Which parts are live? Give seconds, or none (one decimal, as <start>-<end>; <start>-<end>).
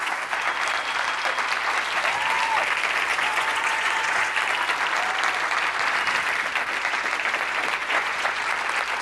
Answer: 0.0-3.1; 4.3-7.8; 8.4-9.0